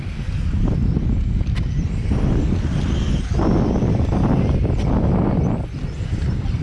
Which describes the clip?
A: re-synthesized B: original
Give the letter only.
B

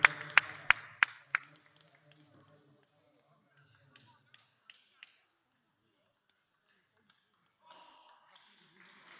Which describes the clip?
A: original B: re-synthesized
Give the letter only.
A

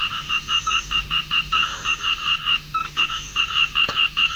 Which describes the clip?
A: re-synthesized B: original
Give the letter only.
A